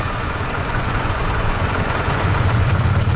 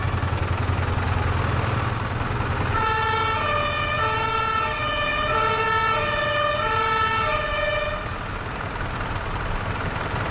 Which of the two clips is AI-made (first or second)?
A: first